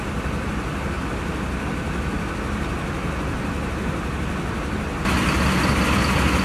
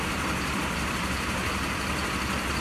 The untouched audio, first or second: first